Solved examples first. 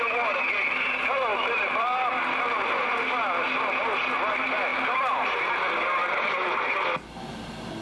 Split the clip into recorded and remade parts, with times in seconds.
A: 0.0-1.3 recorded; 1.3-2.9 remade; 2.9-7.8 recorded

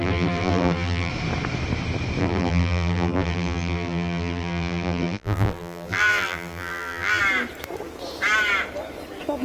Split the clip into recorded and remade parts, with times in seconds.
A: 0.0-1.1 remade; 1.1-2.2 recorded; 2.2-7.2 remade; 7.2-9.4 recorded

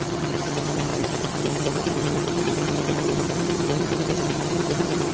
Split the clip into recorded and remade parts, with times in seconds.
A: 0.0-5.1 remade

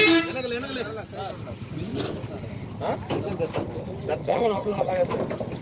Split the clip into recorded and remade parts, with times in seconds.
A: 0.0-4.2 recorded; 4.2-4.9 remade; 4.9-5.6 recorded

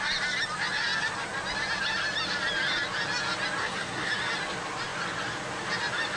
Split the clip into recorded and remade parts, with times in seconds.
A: 0.0-3.6 recorded; 3.6-4.1 remade; 4.1-6.2 recorded

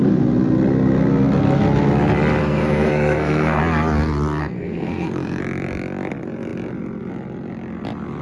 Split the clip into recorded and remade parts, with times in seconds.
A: 0.0-2.4 recorded; 2.4-3.6 remade; 3.6-4.4 recorded; 4.4-5.4 remade; 5.4-8.2 recorded

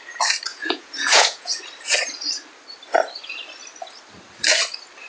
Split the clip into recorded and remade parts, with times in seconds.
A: 0.0-0.5 recorded; 0.5-1.5 remade; 1.5-5.1 recorded

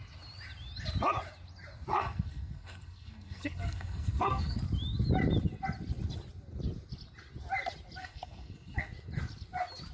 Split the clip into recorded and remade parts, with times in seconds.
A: 0.0-1.9 recorded; 1.9-4.6 remade; 4.6-8.0 recorded; 8.0-8.9 remade; 8.9-9.9 recorded